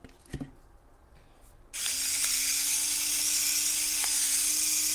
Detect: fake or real real